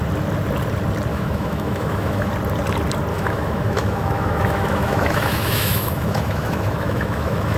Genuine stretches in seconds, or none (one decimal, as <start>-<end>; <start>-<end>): 0.0-1.1; 2.3-3.1